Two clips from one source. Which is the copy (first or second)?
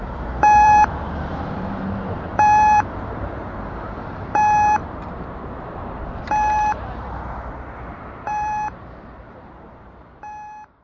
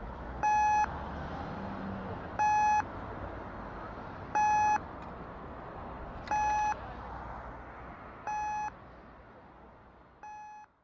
first